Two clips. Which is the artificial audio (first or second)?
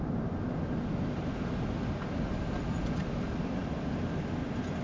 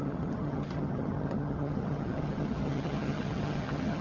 second